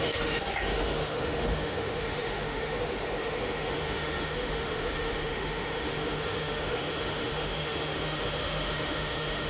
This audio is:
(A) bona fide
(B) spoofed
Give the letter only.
B